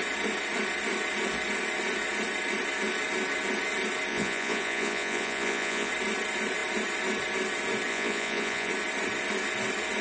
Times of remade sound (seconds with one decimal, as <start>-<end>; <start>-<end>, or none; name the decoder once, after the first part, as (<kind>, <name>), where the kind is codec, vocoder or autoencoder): 4.1-5.9 (vocoder, Vocos); 7.9-8.7